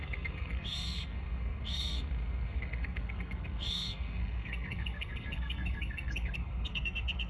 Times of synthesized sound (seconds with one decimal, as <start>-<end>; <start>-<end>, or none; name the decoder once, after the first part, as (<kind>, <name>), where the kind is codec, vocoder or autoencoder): 0.0-7.3 (codec, SNAC)